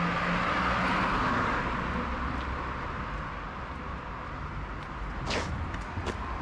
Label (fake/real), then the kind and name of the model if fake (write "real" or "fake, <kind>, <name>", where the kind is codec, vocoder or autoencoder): real